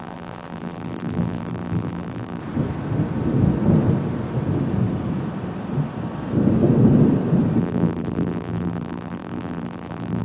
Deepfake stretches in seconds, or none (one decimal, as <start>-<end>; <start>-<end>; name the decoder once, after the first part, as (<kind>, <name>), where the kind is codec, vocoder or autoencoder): 0.0-2.4 (vocoder, BigVGAN v2); 7.6-10.2